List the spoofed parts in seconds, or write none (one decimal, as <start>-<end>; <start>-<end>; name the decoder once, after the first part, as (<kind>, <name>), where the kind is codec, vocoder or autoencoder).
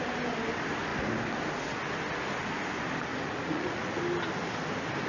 3.1-4.0 (vocoder, Vocos)